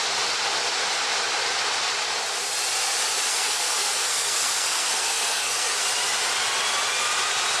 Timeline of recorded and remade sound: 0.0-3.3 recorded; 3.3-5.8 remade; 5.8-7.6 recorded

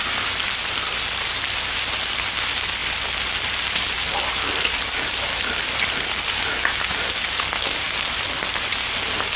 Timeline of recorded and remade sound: 0.0-9.4 recorded

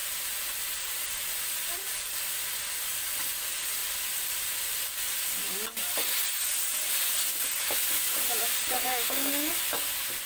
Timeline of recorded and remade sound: 0.0-8.8 recorded; 8.8-9.5 remade; 9.5-10.3 recorded

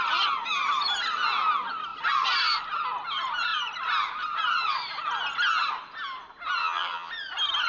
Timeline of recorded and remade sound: 0.0-6.6 recorded; 6.6-7.1 remade; 7.1-7.7 recorded

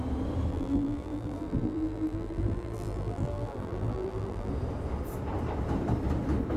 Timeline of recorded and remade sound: 0.0-0.5 recorded; 0.5-4.5 remade; 4.5-6.6 recorded

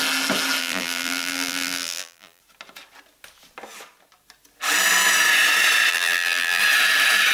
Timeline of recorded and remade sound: 0.0-0.6 recorded; 0.6-2.4 remade; 2.4-5.9 recorded; 5.9-6.6 remade; 6.6-7.3 recorded

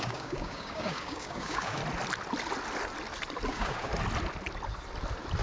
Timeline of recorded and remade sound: 0.0-1.8 remade; 1.8-3.5 recorded; 3.5-3.9 remade; 3.9-5.4 recorded

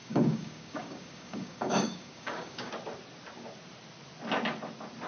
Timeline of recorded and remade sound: 0.0-2.7 remade; 2.7-5.1 recorded